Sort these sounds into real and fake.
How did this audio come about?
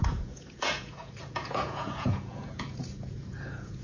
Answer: fake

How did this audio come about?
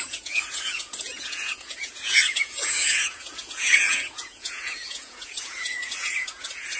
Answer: fake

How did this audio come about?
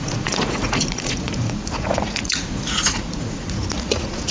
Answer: fake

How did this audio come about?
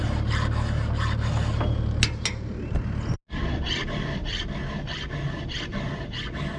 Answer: real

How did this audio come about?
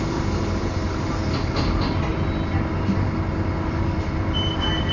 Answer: real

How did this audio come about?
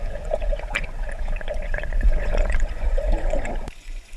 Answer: fake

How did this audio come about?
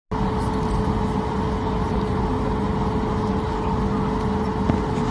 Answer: real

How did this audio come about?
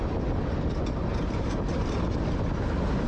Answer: real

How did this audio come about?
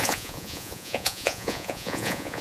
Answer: fake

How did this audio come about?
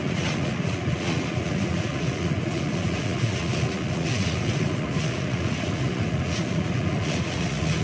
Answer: fake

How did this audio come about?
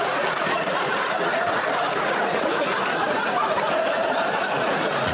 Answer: fake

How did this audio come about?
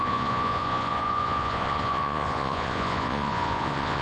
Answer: fake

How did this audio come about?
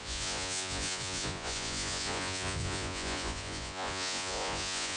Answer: fake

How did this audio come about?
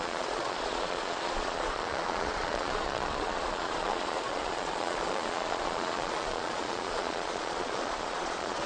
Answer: fake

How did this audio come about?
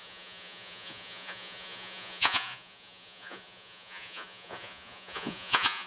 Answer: fake